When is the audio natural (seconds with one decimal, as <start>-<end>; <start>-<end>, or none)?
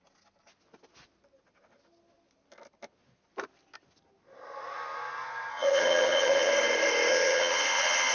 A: 0.0-5.5; 6.5-7.1